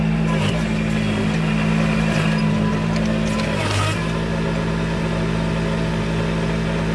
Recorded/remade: recorded